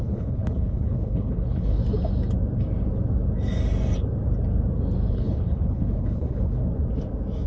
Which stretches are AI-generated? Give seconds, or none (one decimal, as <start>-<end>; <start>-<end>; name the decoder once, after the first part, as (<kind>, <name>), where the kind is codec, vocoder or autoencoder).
0.0-1.8 (codec, HILCodec); 5.1-6.6